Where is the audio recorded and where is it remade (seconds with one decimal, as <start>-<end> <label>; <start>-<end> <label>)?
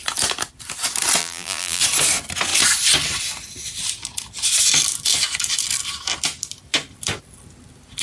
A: 0.0-1.2 recorded; 1.2-1.8 remade; 1.8-8.0 recorded